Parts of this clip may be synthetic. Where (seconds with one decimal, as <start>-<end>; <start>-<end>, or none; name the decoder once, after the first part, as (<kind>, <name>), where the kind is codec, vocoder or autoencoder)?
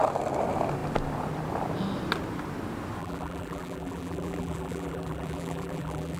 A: 3.0-6.2 (vocoder, BigVGAN v2)